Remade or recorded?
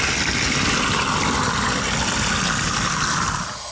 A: recorded